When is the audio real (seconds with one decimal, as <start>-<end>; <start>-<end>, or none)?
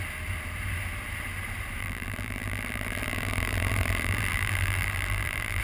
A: 0.0-1.8